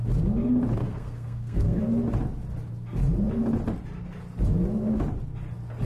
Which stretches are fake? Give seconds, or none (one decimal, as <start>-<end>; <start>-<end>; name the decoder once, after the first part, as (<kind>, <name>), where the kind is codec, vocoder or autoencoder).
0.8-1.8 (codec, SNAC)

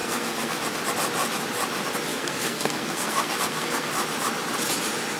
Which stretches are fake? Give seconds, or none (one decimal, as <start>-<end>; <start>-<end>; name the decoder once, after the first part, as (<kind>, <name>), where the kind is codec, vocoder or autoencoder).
0.0-0.6 (codec, SNAC); 2.1-3.9

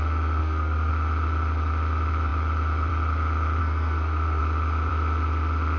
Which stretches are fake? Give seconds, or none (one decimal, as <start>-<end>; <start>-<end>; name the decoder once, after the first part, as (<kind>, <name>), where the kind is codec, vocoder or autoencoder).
0.4-0.9 (codec, SNAC); 3.6-4.4

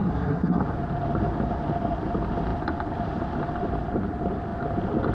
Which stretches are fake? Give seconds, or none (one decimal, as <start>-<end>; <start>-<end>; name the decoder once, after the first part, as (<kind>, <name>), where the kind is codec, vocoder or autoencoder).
0.0-0.6 (codec, SNAC)

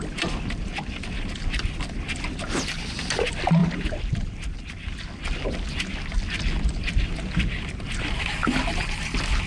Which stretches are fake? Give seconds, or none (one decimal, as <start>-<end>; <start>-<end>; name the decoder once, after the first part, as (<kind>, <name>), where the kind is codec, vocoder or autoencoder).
none

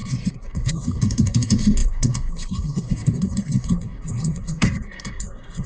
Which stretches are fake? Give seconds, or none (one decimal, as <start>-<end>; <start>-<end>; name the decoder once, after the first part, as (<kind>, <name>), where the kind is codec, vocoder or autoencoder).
0.0-5.7 (codec, SNAC)

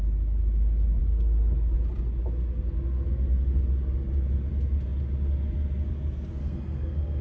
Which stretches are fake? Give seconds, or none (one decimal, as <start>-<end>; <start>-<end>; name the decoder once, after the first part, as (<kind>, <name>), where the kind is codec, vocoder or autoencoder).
6.4-7.2 (codec, SNAC)